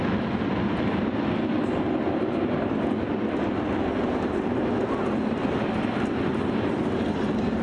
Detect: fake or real real